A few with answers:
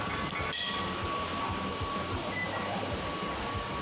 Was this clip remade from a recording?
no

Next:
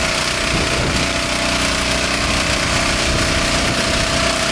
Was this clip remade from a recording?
no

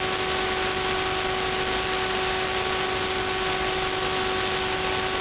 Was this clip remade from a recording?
no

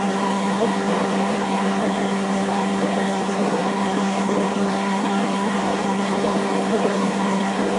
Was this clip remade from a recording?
yes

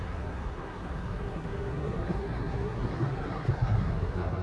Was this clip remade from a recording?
yes